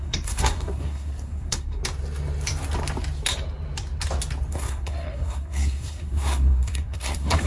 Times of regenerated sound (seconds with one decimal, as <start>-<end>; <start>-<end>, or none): 0.0-1.8; 4.5-7.5